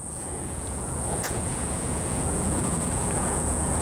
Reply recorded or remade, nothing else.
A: remade